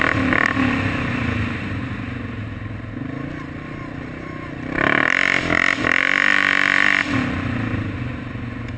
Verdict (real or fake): real